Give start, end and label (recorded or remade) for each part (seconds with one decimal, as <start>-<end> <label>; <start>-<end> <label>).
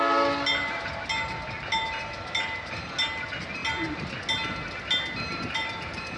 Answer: 0.0-5.3 recorded; 5.3-6.2 remade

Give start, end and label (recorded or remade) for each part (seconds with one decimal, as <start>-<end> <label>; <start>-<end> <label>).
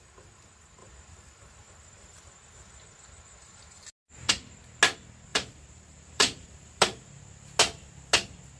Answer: 0.0-5.3 recorded; 5.3-7.2 remade; 7.2-8.6 recorded